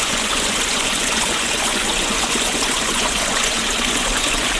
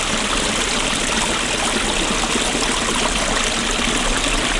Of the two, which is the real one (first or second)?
second